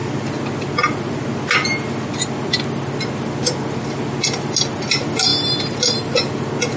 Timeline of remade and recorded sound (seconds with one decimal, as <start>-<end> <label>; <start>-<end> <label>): 0.0-6.8 recorded